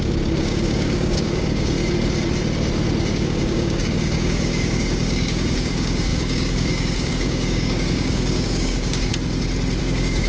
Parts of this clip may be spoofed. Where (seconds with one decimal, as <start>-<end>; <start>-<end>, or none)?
0.0-1.8; 3.1-9.1; 9.8-10.3